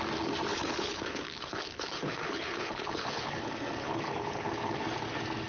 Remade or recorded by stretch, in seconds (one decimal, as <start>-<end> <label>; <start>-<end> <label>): 0.0-0.5 recorded; 0.5-3.4 remade; 3.4-3.8 recorded; 3.8-4.8 remade; 4.8-5.5 recorded